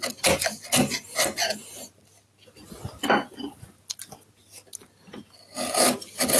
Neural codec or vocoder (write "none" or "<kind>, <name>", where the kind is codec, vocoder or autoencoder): none